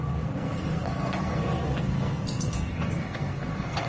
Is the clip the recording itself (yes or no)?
no